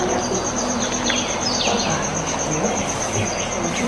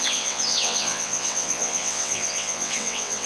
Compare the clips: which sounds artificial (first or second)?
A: second